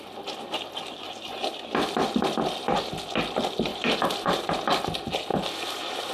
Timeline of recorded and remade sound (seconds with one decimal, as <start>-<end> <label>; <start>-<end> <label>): 0.0-3.7 recorded; 3.7-4.5 remade; 4.5-5.3 recorded; 5.3-6.1 remade